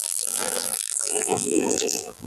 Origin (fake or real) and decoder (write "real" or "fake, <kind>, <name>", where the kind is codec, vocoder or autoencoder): fake, vocoder, BigVGAN v2